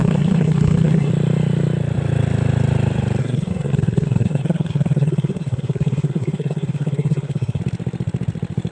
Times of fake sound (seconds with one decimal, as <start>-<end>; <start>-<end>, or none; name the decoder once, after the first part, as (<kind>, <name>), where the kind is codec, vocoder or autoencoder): 0.0-1.1 (codec, SNAC); 3.2-7.6